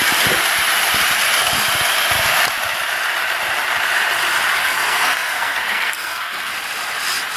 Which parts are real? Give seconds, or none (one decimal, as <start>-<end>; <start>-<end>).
0.0-4.6; 6.5-7.4

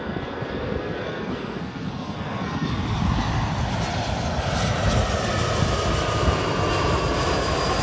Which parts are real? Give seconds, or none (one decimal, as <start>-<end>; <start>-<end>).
2.8-7.8